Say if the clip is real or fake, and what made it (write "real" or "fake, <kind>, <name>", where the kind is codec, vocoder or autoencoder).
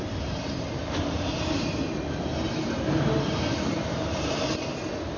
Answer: real